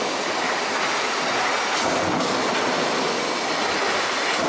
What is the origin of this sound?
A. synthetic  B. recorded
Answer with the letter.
B